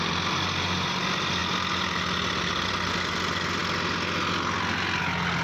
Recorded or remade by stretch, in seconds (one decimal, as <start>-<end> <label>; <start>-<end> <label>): 0.0-5.4 recorded